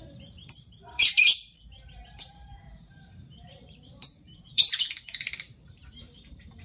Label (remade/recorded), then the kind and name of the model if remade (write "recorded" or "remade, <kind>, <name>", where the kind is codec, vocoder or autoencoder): remade, vocoder, BigVGAN v2